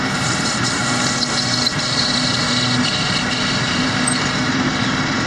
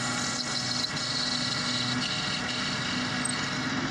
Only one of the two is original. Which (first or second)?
second